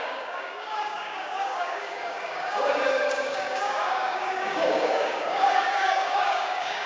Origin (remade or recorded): remade